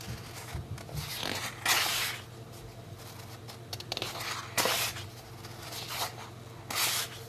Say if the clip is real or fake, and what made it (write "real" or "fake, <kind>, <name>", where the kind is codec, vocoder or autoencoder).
real